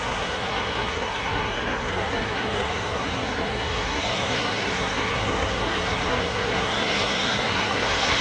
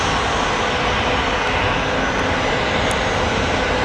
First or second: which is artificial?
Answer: first